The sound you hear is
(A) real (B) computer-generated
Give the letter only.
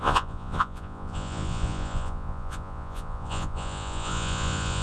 B